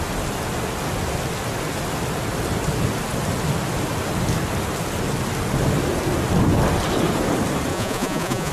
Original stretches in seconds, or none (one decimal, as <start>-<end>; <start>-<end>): 0.0-7.7